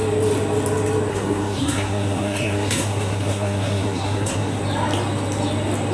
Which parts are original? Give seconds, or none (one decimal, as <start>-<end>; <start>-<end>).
0.0-1.1; 4.6-5.9